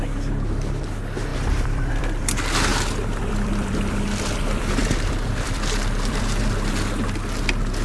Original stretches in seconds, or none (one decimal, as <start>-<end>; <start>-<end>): 0.0-1.3; 2.2-2.7; 6.7-7.8